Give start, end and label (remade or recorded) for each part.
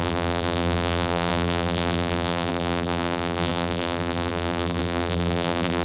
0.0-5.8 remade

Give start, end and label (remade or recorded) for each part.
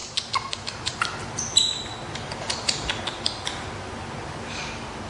0.0-5.1 recorded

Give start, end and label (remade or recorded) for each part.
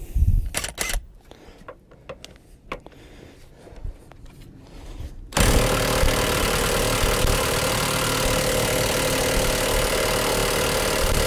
0.0-11.3 recorded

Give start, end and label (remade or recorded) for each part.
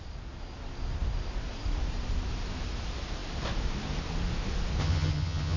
0.0-4.8 recorded; 4.8-5.6 remade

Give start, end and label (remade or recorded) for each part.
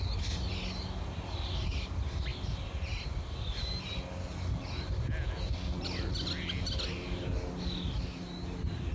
0.0-8.9 recorded